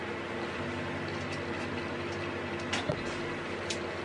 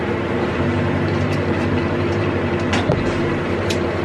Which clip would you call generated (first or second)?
second